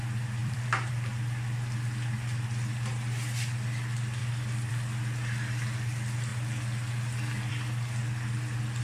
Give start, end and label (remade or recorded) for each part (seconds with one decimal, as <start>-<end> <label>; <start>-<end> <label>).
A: 0.0-0.4 recorded; 0.4-0.9 remade; 0.9-4.2 recorded; 4.2-4.7 remade; 4.7-8.8 recorded